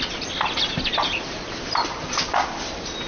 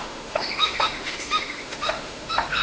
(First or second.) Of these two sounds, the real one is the first